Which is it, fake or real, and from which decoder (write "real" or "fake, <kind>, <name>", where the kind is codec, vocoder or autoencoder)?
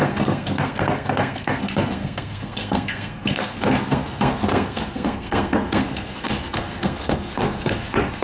fake, codec, SNAC